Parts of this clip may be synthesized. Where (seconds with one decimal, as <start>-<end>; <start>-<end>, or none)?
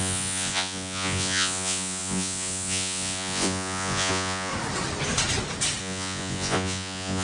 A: 0.0-4.5; 5.8-7.2